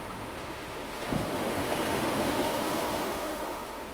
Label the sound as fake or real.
fake